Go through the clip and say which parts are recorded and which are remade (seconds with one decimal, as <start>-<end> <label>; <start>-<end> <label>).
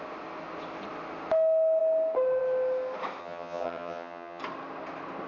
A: 0.0-3.2 recorded; 3.2-4.4 remade; 4.4-5.3 recorded